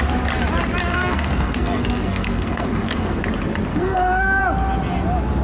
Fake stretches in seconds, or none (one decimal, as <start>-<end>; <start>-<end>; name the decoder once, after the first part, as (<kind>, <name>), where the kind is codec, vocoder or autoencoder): 0.9-3.2 (codec, SNAC); 3.7-4.4

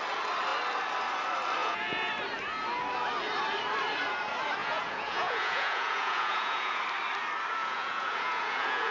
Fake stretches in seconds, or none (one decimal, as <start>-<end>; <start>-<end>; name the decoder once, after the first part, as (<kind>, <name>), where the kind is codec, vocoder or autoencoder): 1.6-2.1 (vocoder, Vocos); 4.6-6.8; 7.6-8.9

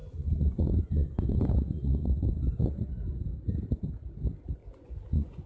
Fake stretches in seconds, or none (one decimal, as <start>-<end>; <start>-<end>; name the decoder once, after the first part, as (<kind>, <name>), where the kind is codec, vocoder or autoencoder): 0.0-2.9 (vocoder, Vocos); 4.6-5.5

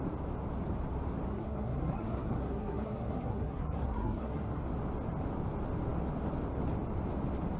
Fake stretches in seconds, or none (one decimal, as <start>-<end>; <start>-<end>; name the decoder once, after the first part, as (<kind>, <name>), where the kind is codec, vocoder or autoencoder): 1.3-4.6 (codec, SNAC)